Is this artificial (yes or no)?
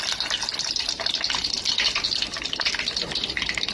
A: yes